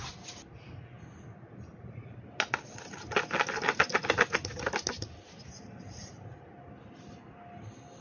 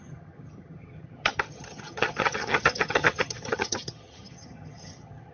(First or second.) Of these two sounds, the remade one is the second